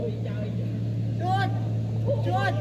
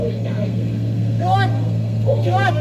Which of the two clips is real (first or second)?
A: first